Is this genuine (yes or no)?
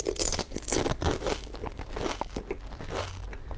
yes